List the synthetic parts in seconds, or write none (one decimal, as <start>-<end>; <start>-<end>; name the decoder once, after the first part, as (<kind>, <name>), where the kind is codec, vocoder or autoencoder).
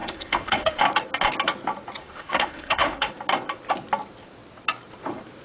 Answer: 0.0-0.8 (autoencoder, DAC-VAE); 2.0-3.1